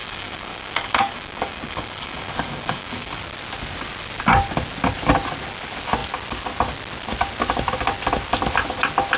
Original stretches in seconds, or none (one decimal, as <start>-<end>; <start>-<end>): 3.2-9.2